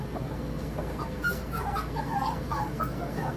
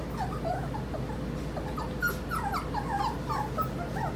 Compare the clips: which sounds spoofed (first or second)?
first